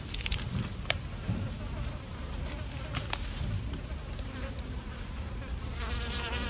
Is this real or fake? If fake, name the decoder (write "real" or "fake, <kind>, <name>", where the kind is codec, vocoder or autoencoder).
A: fake, vocoder, BigVGAN v2